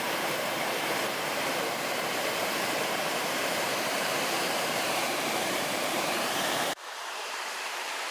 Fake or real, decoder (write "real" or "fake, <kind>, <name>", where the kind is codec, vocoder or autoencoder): fake, vocoder, BigVGAN v2